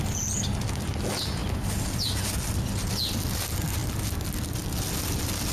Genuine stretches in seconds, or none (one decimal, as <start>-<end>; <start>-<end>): 0.0-5.5